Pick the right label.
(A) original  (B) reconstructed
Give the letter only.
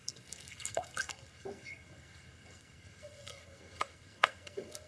B